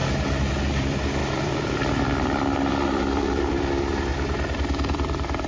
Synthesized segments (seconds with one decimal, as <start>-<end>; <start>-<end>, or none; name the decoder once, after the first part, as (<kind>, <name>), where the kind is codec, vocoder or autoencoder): 0.7-5.5 (vocoder, BigVGAN v2)